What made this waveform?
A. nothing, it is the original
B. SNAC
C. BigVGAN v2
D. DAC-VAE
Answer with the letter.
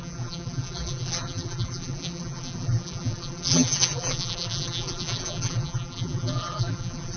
C